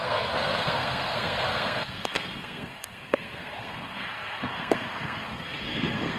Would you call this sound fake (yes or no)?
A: yes